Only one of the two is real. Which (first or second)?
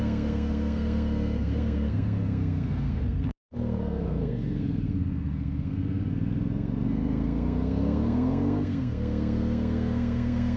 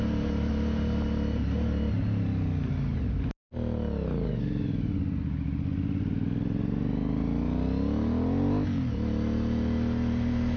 second